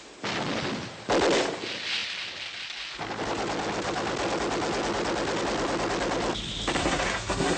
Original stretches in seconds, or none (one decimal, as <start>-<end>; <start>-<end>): 0.0-6.8